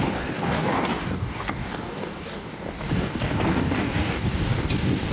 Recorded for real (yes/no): no